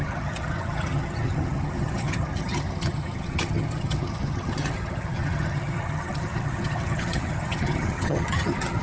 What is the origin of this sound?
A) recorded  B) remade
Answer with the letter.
B